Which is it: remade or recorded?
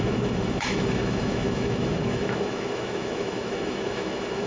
remade